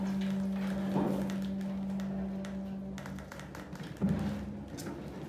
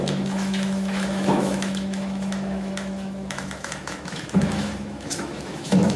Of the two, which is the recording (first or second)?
first